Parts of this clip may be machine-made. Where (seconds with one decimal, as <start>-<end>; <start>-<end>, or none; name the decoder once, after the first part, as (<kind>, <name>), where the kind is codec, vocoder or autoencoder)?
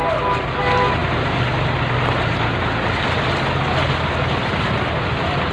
none